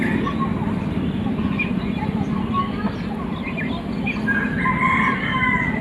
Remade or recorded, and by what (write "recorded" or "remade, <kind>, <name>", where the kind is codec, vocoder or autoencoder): recorded